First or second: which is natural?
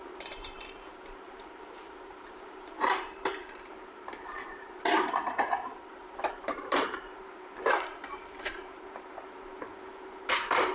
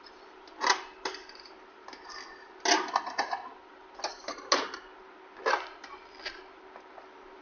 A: second